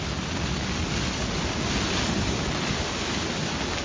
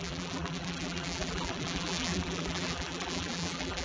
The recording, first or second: first